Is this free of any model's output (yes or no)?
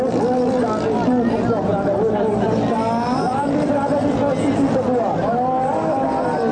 yes